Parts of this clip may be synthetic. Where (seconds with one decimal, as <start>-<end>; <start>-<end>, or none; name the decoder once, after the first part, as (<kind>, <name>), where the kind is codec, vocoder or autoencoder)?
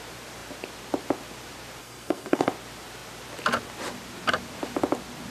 1.8-2.5 (codec, SNAC)